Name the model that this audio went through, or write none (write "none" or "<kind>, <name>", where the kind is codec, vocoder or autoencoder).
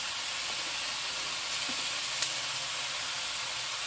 none